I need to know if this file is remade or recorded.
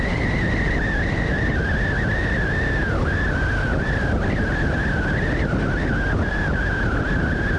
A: recorded